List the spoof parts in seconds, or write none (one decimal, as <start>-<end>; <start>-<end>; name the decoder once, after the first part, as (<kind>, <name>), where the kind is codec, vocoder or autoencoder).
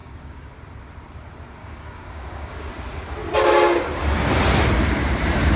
0.0-0.5 (codec, DAC); 1.6-2.7